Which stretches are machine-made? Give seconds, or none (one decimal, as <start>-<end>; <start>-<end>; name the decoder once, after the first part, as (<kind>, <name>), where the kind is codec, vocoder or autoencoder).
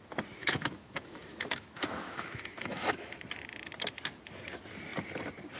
0.4-3.1 (autoencoder, DAC-VAE)